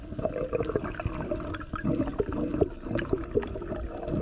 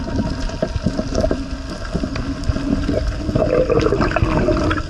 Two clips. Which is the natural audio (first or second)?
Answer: second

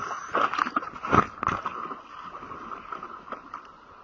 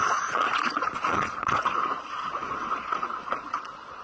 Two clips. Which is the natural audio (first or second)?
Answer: first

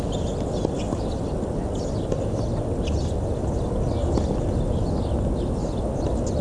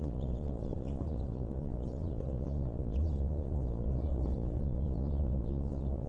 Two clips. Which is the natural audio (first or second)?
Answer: first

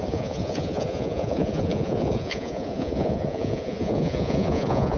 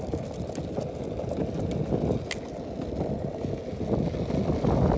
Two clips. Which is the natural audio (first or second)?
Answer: second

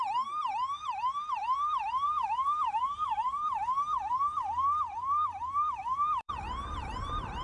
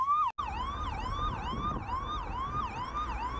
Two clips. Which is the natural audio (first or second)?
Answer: second